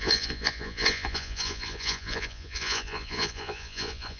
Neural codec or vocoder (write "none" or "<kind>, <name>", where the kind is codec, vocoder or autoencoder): vocoder, Vocos